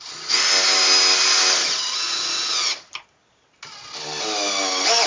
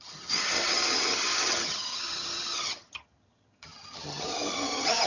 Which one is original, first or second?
first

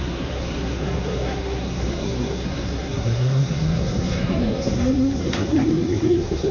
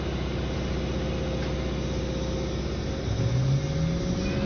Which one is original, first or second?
second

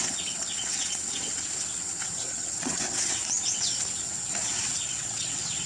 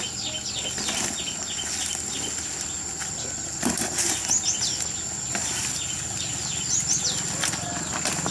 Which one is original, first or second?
second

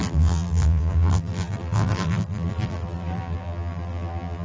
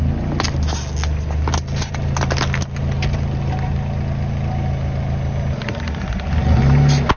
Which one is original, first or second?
second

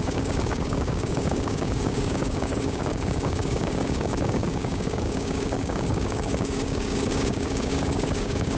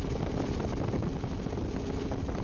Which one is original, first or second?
second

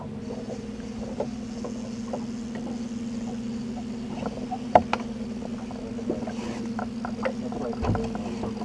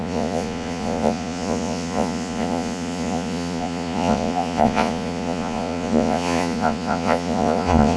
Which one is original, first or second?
first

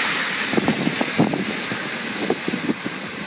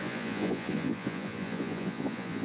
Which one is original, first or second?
first